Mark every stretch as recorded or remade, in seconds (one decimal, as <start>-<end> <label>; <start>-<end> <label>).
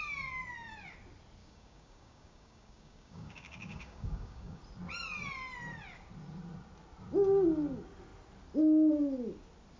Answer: 0.0-1.4 recorded; 1.4-4.6 remade; 4.6-9.8 recorded